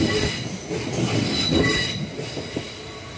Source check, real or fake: real